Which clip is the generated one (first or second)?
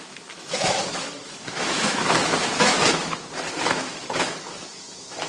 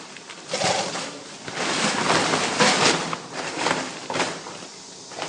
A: first